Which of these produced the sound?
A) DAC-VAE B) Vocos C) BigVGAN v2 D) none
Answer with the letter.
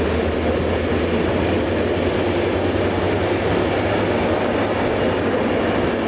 D